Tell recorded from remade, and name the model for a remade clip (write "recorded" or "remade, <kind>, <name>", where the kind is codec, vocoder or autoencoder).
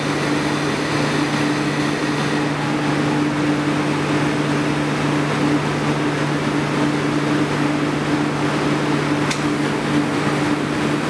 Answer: recorded